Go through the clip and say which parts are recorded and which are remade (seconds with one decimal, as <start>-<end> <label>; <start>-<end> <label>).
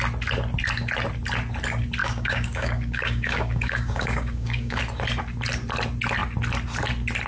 0.0-2.0 recorded; 2.0-4.8 remade; 4.8-7.3 recorded